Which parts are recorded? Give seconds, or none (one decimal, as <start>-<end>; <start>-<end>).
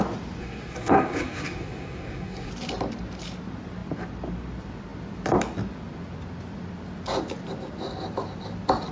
0.0-0.4; 2.5-8.9